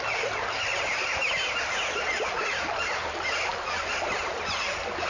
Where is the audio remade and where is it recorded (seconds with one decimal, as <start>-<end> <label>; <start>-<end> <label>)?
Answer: 0.0-5.1 recorded